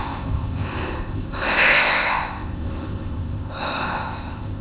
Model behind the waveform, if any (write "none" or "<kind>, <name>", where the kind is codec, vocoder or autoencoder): codec, ZipCodec